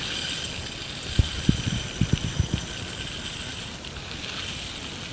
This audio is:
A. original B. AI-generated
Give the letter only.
A